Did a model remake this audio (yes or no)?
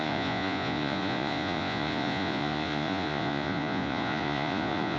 yes